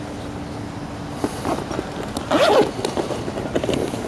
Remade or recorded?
recorded